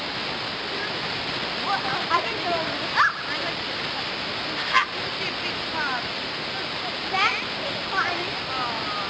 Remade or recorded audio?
recorded